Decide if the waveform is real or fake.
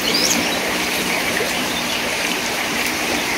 fake